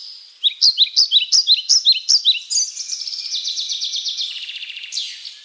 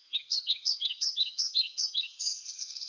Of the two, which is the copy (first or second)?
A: second